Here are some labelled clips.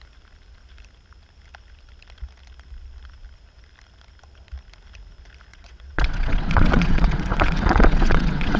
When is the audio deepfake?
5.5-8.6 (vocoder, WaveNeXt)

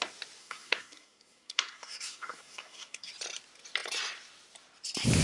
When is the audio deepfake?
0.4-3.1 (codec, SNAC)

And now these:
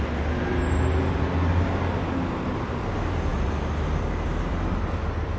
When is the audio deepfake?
none